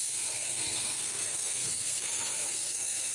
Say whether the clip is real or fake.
fake